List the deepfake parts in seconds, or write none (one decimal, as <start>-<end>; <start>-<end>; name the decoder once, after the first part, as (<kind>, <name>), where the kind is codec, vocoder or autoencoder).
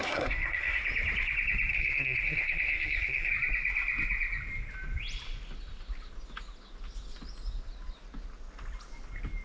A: 0.0-0.8 (codec, SNAC); 1.7-3.3